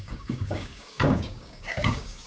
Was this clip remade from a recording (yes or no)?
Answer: yes